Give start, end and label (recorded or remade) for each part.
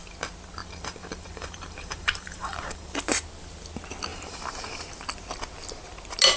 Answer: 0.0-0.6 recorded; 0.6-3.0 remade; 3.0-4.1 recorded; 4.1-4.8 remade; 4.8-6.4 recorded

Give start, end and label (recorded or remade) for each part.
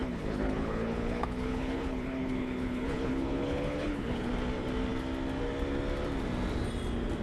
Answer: 0.0-4.3 remade; 4.3-7.2 recorded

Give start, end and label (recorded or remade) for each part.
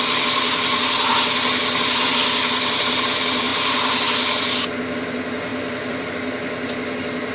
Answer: 0.0-5.5 recorded; 5.5-6.1 remade; 6.1-7.3 recorded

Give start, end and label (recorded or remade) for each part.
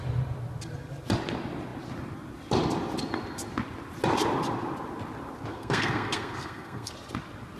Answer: 0.0-5.5 recorded; 5.5-6.9 remade; 6.9-7.6 recorded